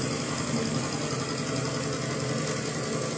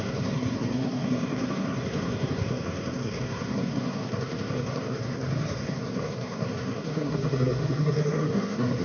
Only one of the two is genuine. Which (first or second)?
first